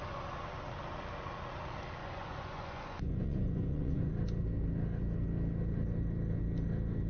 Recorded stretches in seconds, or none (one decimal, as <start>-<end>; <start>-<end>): 0.0-2.0; 4.1-7.1